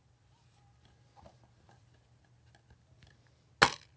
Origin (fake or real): real